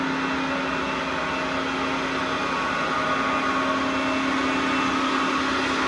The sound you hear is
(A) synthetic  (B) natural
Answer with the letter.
B